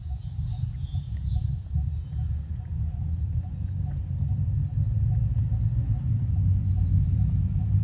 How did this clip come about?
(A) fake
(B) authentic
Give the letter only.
A